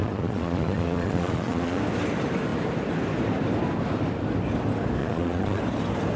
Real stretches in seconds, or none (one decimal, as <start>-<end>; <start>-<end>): 1.8-5.0; 5.6-6.2